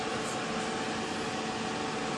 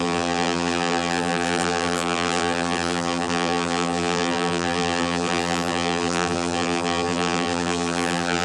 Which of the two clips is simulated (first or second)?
second